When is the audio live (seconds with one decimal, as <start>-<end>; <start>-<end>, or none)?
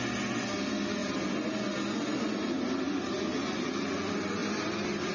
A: 0.0-5.1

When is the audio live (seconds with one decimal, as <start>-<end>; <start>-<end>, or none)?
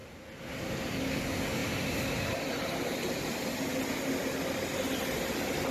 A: 0.0-1.6; 2.4-5.7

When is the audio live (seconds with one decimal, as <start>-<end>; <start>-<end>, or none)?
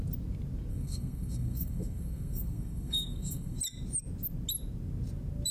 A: 0.0-0.7; 3.6-5.5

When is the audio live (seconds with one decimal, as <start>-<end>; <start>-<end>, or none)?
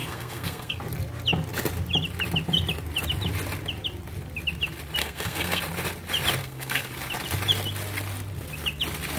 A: 0.8-5.0; 5.6-6.4; 6.9-9.2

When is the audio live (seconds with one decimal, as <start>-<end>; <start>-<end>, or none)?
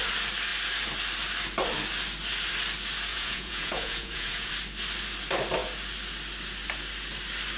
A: 0.0-3.1; 4.5-7.6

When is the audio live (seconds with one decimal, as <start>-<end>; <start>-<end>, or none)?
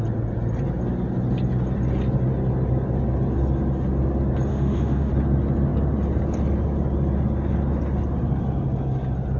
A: 0.0-4.5; 5.1-9.4